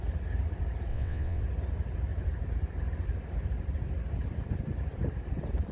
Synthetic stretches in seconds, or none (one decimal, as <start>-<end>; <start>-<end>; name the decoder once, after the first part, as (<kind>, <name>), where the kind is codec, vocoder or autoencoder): 0.9-1.4 (vocoder, WaveNeXt)